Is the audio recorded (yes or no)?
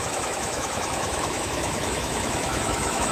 no